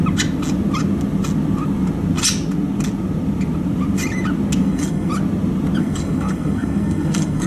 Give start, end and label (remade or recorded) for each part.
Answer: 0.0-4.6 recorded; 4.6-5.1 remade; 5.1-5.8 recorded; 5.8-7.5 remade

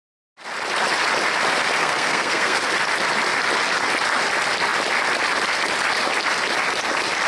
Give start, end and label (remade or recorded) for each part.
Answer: 0.0-1.8 recorded; 1.8-2.7 remade; 2.7-7.3 recorded

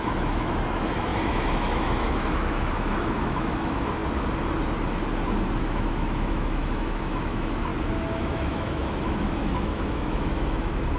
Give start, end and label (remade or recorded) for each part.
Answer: 0.0-4.0 remade; 4.0-5.6 recorded; 5.6-7.7 remade; 7.7-8.2 recorded; 8.2-11.0 remade

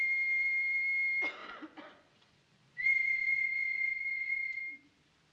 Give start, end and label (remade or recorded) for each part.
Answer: 0.0-1.4 recorded; 1.4-4.6 remade; 4.6-5.3 recorded

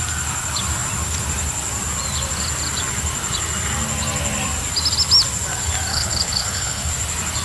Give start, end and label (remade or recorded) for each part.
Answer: 0.0-5.9 recorded; 5.9-6.9 remade; 6.9-7.4 recorded

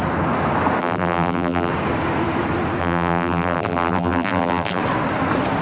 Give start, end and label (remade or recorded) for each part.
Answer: 0.0-0.8 recorded; 0.8-1.7 remade; 1.7-2.8 recorded; 2.8-4.8 remade; 4.8-5.6 recorded